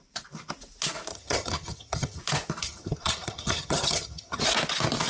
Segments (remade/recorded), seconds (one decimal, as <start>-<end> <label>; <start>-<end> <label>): 0.0-1.1 recorded; 1.1-2.2 remade; 2.2-2.6 recorded; 2.6-4.4 remade; 4.4-5.1 recorded